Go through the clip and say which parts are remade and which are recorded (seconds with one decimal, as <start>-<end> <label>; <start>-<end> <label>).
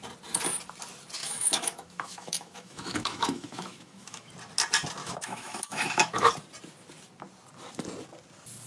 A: 0.0-1.2 recorded; 1.2-4.3 remade; 4.3-5.0 recorded; 5.0-6.3 remade; 6.3-8.7 recorded